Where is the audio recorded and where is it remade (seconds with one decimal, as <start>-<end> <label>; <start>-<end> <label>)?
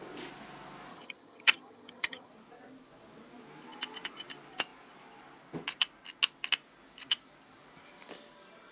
0.0-0.9 recorded; 0.9-2.3 remade; 2.3-8.7 recorded